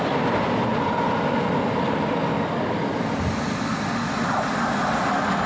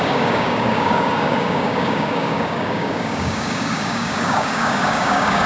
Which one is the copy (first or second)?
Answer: second